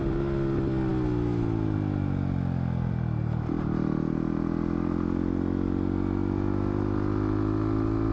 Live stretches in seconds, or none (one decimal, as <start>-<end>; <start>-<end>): 0.0-8.1